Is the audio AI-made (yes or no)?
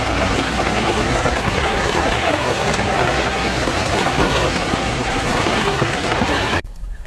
yes